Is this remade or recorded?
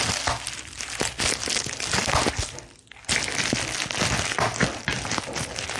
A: recorded